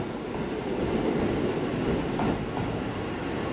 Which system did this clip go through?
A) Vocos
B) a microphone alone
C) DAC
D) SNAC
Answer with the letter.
B